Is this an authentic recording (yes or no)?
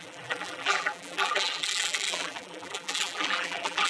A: no